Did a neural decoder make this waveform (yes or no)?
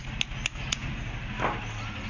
no